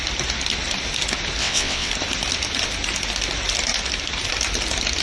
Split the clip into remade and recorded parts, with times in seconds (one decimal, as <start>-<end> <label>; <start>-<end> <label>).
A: 0.0-1.4 recorded; 1.4-1.9 remade; 1.9-5.0 recorded